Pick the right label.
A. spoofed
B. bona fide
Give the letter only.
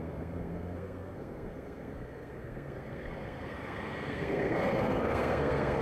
A